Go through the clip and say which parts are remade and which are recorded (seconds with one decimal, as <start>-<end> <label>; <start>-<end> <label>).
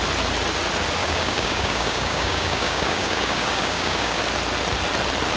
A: 0.0-1.0 recorded; 1.0-4.2 remade; 4.2-5.4 recorded